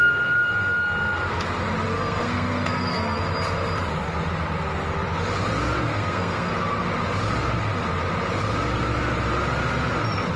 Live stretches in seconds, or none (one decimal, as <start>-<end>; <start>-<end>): 0.0-1.9; 3.2-5.9; 6.5-10.4